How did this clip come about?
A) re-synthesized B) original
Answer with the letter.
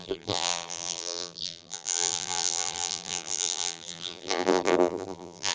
A